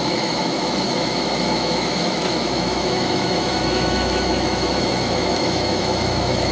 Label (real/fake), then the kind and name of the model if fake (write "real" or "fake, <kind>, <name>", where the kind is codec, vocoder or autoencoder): fake, autoencoder, DAC-VAE